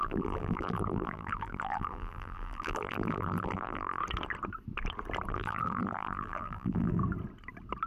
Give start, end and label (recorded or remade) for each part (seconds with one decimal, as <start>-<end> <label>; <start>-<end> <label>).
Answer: 0.0-4.0 remade; 4.0-5.3 recorded; 5.3-7.0 remade; 7.0-7.9 recorded